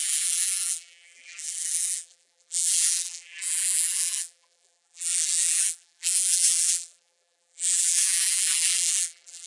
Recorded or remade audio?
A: remade